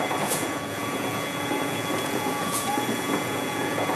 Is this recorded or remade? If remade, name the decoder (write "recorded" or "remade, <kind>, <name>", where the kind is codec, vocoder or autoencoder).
remade, vocoder, Vocos